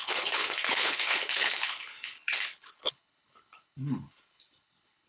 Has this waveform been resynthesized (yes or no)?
yes